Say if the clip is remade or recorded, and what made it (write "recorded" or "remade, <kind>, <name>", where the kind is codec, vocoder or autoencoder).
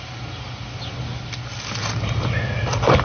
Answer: recorded